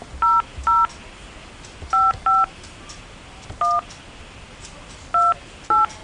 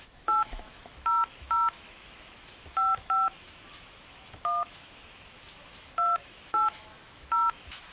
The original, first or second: first